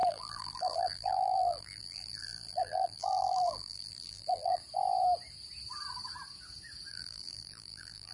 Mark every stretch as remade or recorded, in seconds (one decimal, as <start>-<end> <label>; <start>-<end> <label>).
0.0-4.6 remade; 4.6-6.9 recorded; 6.9-8.1 remade